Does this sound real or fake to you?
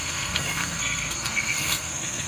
fake